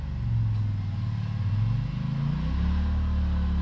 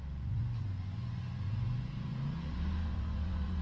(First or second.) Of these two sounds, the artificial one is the second